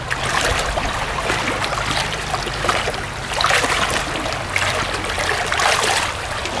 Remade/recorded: recorded